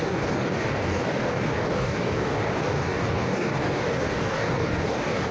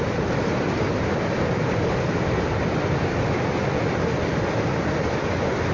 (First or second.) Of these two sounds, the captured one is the second